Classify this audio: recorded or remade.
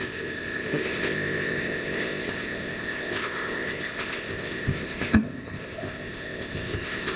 remade